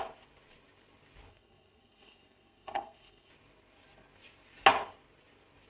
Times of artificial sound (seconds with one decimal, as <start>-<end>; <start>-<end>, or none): 1.3-3.3